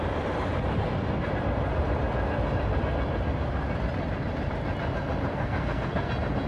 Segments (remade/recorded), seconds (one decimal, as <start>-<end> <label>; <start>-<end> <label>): 0.0-5.3 recorded; 5.3-6.1 remade; 6.1-6.5 recorded